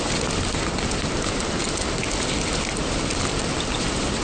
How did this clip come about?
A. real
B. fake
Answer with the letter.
A